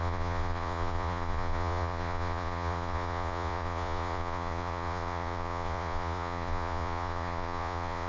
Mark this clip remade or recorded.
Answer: remade